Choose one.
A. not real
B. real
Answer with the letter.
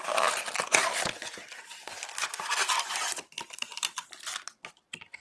B